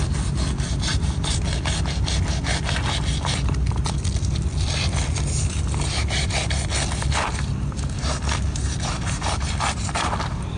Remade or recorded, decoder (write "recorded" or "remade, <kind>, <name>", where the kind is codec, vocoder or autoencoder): recorded